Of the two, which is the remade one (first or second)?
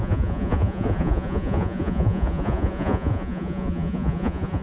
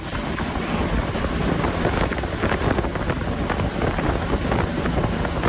first